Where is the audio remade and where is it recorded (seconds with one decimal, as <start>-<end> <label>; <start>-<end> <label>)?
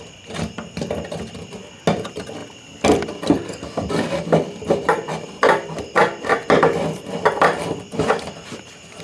0.0-9.0 recorded